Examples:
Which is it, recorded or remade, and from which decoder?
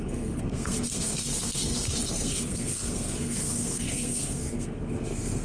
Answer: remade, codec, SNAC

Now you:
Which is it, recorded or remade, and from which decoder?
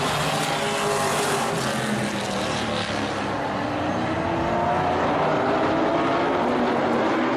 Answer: recorded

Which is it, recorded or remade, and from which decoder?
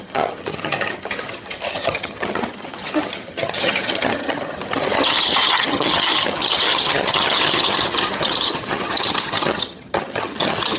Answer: remade, vocoder, HiFi-GAN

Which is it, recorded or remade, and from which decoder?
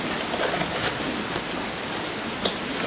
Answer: recorded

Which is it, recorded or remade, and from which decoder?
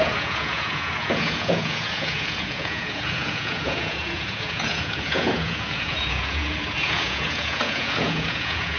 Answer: remade, vocoder, Vocos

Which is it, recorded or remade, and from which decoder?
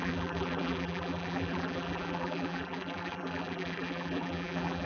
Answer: remade, vocoder, BigVGAN v2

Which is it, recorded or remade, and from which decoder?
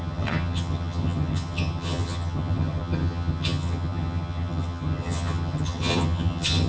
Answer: remade, vocoder, HiFi-GAN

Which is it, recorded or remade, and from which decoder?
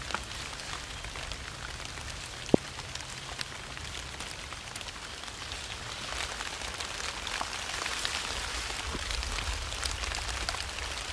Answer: recorded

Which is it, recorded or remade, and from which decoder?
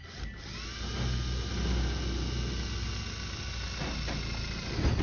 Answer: recorded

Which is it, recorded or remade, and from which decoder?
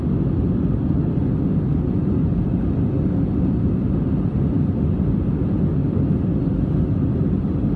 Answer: recorded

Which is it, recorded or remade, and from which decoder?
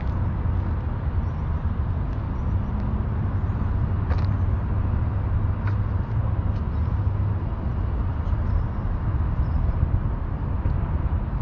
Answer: recorded